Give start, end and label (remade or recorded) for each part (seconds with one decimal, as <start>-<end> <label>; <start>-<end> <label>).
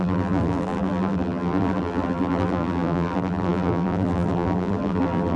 0.0-5.4 remade